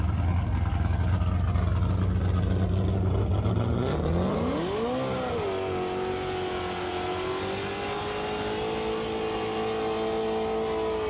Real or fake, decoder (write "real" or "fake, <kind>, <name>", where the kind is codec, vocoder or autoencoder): real